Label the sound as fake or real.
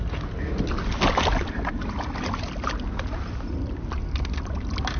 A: real